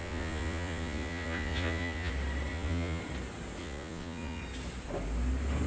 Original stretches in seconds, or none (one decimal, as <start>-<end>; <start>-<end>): 2.1-2.5; 3.0-3.6; 4.4-5.7